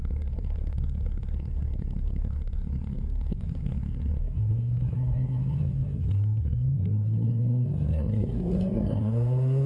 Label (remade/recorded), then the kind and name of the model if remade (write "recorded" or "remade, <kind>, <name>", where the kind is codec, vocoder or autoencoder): remade, codec, SNAC